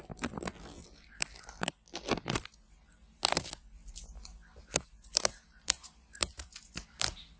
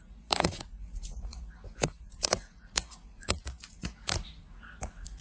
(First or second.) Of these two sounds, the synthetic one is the second